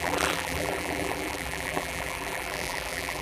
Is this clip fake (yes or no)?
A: yes